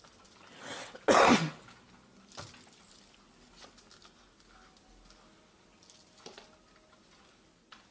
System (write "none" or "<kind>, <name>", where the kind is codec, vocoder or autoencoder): none